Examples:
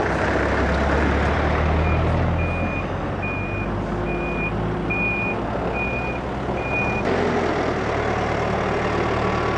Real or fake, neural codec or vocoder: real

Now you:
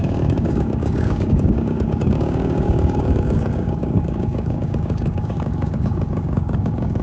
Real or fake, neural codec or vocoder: fake, codec, DAC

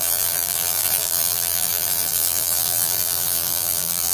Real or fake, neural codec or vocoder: fake, vocoder, BigVGAN v2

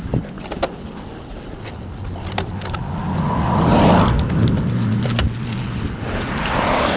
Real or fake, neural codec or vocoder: real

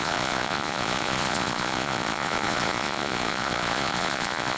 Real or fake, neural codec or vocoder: fake, vocoder, Vocos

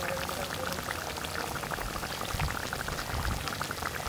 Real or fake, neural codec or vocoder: real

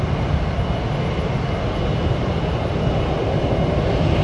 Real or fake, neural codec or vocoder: real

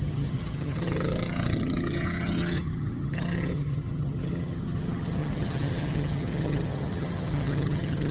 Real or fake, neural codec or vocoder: fake, vocoder, HiFi-GAN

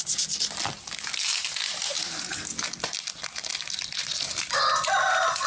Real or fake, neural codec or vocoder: real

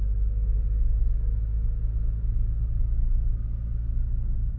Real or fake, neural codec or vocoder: real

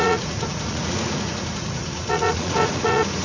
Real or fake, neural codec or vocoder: fake, vocoder, Vocos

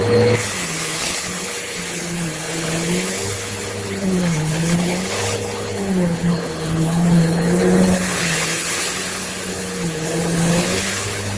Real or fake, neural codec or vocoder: fake, codec, HILCodec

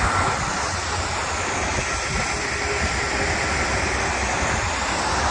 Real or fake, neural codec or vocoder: real